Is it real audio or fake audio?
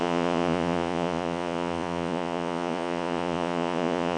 fake